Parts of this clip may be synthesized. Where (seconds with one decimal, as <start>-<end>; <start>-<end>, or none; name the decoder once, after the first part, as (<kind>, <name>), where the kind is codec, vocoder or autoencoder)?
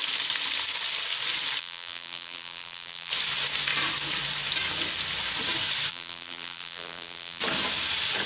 1.6-3.1 (vocoder, BigVGAN v2); 5.9-7.4